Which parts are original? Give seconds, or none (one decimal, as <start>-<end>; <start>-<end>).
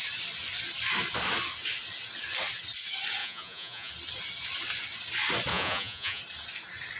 0.0-3.2; 3.9-5.5; 6.2-7.0